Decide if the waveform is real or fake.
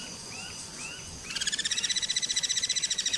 fake